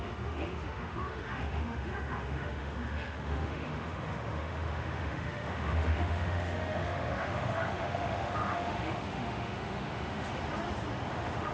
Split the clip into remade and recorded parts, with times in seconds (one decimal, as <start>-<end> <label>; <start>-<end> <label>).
0.0-10.3 remade; 10.3-11.1 recorded; 11.1-11.5 remade